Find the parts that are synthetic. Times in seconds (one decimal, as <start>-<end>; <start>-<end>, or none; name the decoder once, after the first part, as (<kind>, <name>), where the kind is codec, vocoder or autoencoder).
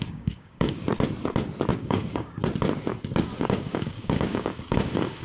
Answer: 0.0-0.8 (codec, DAC); 1.7-2.4; 3.4-5.2